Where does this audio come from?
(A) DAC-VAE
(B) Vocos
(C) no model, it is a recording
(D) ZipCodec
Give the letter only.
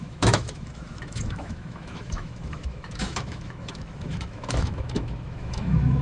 A